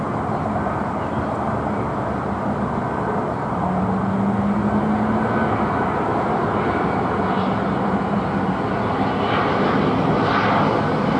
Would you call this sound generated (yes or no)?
no